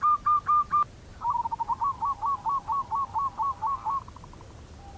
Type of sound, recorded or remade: recorded